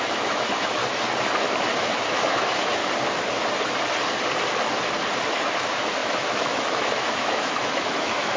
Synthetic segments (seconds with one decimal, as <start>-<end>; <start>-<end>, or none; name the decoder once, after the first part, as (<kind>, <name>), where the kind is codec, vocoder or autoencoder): 0.0-0.8 (autoencoder, DAC-VAE); 1.8-2.8; 5.3-8.4